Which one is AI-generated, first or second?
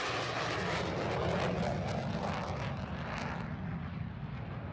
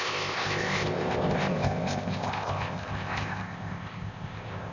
second